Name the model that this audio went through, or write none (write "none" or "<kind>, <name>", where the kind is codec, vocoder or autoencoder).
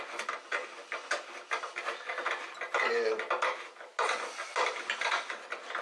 none